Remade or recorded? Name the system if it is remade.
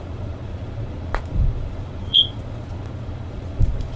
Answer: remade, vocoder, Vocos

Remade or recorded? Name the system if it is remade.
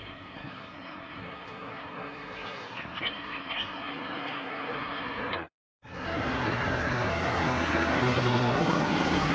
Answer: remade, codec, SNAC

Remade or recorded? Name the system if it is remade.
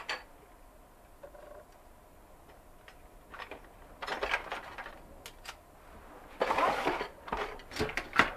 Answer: recorded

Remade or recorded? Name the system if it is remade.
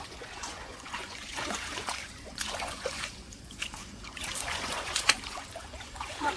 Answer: remade, vocoder, Vocos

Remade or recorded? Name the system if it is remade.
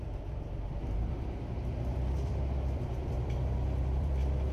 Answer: remade, vocoder, BigVGAN v2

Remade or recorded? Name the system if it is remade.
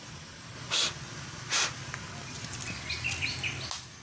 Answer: recorded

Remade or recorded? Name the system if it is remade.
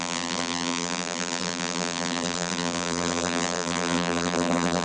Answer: remade, vocoder, BigVGAN v2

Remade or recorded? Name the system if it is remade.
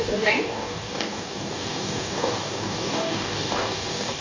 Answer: remade, codec, DAC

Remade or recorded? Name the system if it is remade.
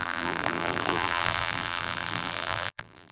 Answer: remade, vocoder, BigVGAN v2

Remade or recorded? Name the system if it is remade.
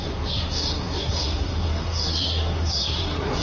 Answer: remade, codec, SNAC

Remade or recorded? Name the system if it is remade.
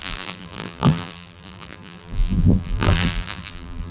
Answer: remade, vocoder, BigVGAN v2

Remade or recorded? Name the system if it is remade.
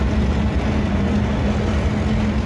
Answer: recorded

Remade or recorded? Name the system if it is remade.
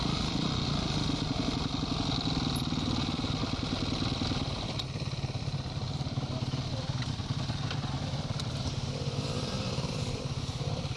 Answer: remade, vocoder, BigVGAN v2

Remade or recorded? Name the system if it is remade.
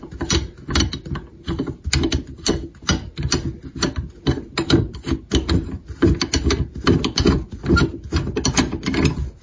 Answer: recorded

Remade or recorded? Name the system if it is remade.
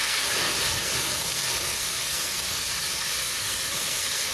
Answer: remade, codec, SNAC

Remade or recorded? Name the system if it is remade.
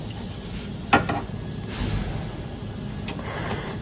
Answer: recorded